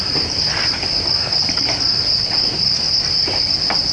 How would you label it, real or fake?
real